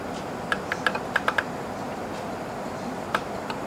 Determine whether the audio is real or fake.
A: real